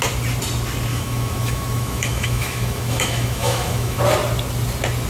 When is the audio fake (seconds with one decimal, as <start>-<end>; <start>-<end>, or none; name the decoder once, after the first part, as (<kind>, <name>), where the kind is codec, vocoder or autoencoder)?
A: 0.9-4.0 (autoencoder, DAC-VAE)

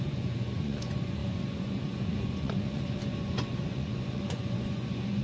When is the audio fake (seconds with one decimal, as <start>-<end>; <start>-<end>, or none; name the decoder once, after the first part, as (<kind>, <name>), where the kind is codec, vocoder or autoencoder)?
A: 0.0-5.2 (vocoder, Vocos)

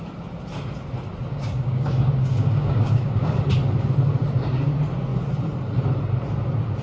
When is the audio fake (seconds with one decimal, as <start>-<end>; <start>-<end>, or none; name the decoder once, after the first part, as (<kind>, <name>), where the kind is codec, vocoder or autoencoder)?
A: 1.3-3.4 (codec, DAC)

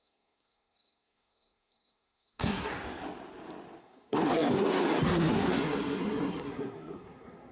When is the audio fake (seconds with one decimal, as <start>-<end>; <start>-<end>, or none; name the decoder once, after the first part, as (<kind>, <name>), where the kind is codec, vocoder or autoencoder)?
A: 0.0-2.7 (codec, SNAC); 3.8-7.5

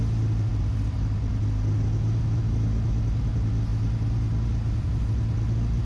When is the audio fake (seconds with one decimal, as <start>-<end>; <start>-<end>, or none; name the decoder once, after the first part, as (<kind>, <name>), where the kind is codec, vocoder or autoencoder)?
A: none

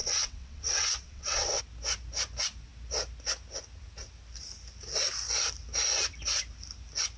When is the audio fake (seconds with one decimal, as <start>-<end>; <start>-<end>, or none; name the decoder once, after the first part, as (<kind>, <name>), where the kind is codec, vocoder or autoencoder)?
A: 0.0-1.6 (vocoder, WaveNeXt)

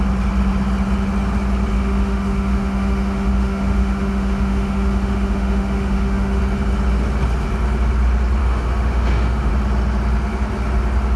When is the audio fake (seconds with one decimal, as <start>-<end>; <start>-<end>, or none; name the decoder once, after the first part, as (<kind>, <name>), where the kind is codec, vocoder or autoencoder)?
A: 1.7-6.4 (autoencoder, DAC-VAE); 8.4-9.5